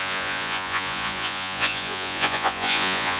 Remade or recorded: remade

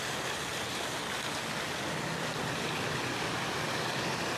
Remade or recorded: recorded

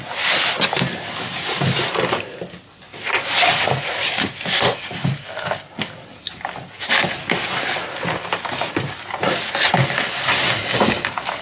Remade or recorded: recorded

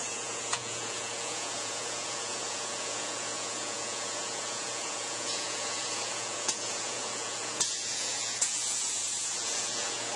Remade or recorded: remade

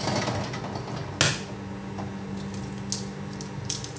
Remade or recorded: recorded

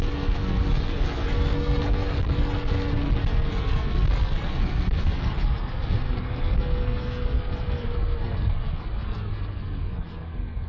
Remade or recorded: remade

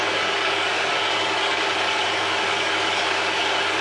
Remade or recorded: remade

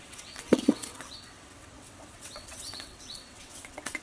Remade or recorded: remade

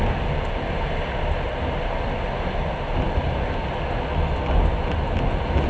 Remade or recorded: recorded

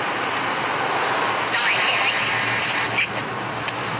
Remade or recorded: recorded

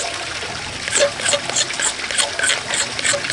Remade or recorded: recorded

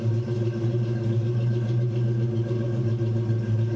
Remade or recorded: recorded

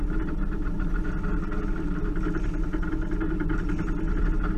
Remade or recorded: recorded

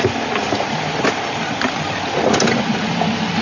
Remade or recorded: recorded